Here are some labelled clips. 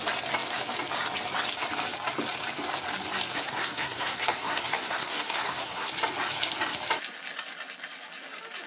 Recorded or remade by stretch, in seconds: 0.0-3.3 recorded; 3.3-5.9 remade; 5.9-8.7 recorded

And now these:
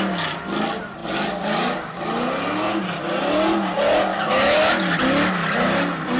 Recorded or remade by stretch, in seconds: 0.0-4.1 recorded; 4.1-4.7 remade; 4.7-6.2 recorded

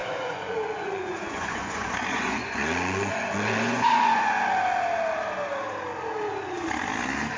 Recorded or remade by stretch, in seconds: 0.0-4.4 remade; 4.4-7.4 recorded

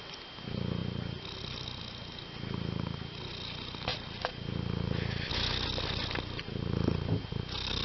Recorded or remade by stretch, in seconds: 0.0-7.8 recorded

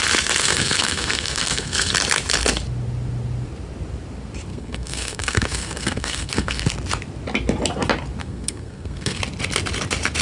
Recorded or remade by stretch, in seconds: 0.0-0.4 recorded; 0.4-1.9 remade; 1.9-4.5 recorded; 4.5-6.7 remade; 6.7-8.2 recorded; 8.2-9.2 remade; 9.2-10.2 recorded

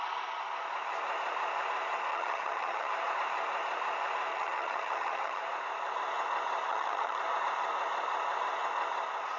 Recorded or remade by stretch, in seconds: 0.0-2.1 recorded; 2.1-2.9 remade; 2.9-4.3 recorded; 4.3-5.4 remade; 5.4-6.7 recorded; 6.7-7.2 remade; 7.2-9.4 recorded

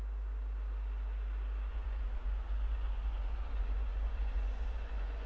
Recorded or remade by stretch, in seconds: 0.0-1.7 recorded; 1.7-5.3 remade